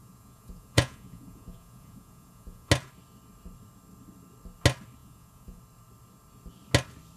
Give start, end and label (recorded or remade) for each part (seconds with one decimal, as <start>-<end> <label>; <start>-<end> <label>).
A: 0.0-2.7 remade; 2.7-5.0 recorded; 5.0-5.6 remade; 5.6-7.2 recorded